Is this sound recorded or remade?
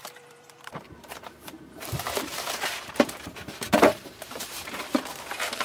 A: remade